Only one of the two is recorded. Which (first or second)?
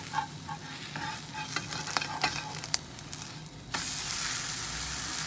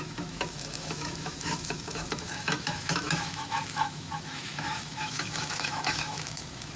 first